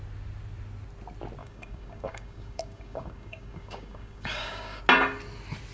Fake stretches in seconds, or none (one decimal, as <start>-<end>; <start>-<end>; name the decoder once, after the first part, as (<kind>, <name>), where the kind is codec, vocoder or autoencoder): 1.4-4.8 (codec, DAC)